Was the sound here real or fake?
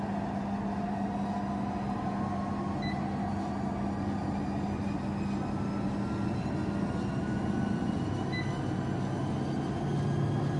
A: real